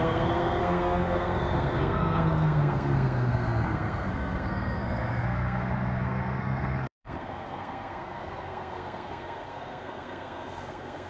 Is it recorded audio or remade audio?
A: remade